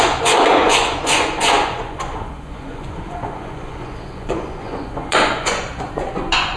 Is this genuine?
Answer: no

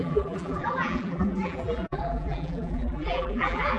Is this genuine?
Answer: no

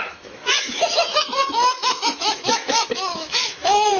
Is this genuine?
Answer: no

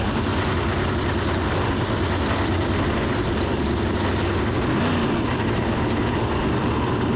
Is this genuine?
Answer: yes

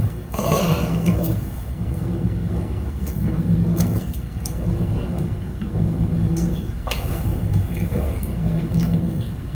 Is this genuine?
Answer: no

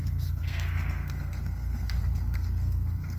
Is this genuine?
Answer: no